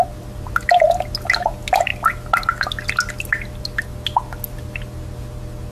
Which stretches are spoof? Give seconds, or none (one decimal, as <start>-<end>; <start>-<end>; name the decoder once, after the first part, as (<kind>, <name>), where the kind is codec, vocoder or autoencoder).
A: none